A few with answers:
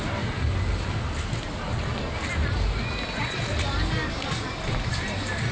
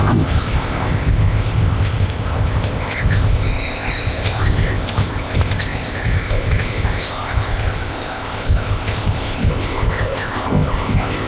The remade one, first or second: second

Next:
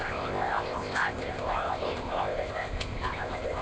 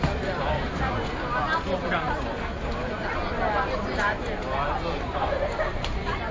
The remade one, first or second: first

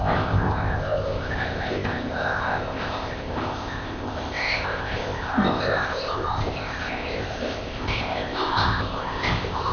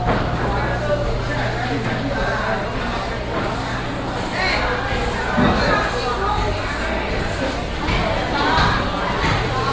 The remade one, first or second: first